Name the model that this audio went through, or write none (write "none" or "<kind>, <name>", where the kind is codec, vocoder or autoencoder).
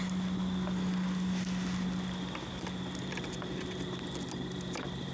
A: none